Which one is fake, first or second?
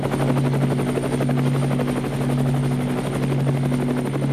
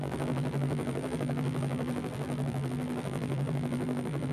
second